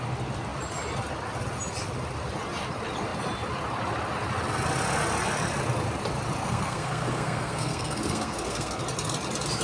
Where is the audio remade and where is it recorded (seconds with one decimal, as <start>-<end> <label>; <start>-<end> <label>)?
0.0-6.4 recorded; 6.4-8.8 remade; 8.8-9.6 recorded

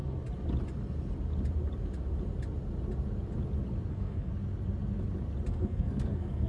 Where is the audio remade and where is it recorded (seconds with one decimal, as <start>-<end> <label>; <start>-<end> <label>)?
0.0-3.9 recorded; 3.9-4.3 remade; 4.3-5.5 recorded; 5.5-6.5 remade